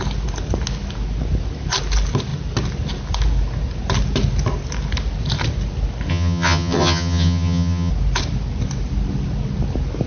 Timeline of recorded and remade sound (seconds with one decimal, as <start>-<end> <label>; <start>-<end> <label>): 0.0-6.1 recorded; 6.1-7.9 remade; 7.9-10.1 recorded